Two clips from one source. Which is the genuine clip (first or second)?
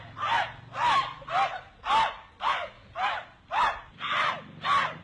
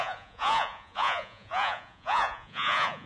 first